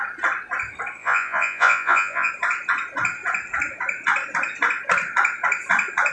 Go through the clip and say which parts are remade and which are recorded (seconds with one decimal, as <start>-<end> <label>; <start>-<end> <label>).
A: 0.0-1.0 recorded; 1.0-2.3 remade; 2.3-6.1 recorded